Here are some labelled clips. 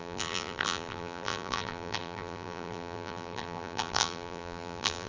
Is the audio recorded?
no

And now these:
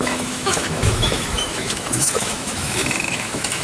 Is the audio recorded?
no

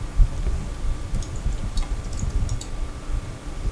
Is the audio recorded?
yes